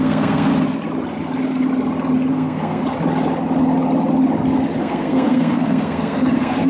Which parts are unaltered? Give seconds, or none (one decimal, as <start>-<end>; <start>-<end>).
0.5-2.3; 2.8-4.8